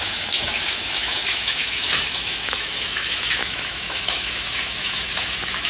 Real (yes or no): no